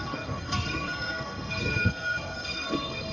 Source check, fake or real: fake